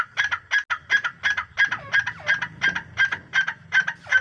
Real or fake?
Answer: real